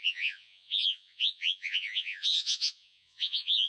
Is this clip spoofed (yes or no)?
yes